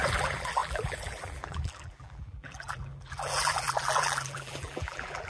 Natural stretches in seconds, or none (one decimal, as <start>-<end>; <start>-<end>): none

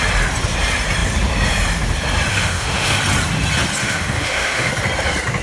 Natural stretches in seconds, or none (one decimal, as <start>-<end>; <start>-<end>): 0.0-2.3; 3.0-3.8; 4.7-5.4